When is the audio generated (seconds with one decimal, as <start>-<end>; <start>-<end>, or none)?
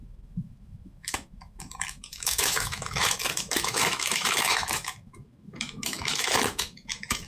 0.0-7.3